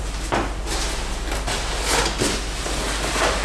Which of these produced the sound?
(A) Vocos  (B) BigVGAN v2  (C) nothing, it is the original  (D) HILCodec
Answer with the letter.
C